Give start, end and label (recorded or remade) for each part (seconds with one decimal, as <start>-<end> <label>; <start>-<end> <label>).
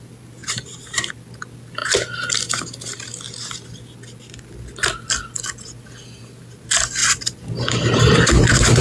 0.0-0.4 recorded; 0.4-1.1 remade; 1.1-7.0 recorded; 7.0-8.8 remade